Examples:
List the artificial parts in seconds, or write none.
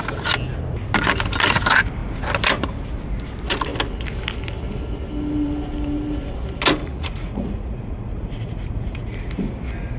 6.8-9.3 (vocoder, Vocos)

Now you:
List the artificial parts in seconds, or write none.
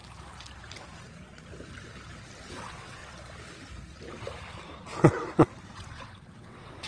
2.5-3.0 (vocoder, WaveNeXt); 5.7-6.9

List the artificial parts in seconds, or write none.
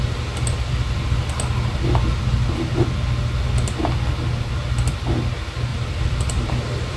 5.7-7.0 (vocoder, BigVGAN v2)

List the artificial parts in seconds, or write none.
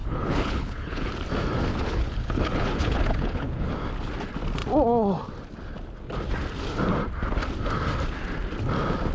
0.0-1.1 (codec, HILCodec); 1.7-3.7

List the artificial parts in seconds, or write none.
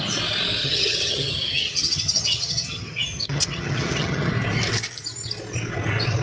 0.6-4.3 (vocoder, HiFi-GAN)